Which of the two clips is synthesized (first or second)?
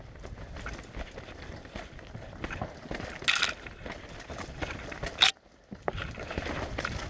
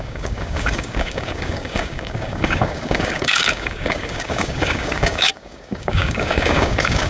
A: second